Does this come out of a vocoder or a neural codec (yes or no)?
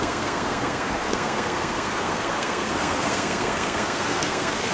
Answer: yes